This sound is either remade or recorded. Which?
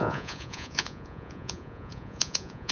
remade